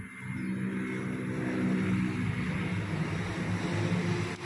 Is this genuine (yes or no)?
yes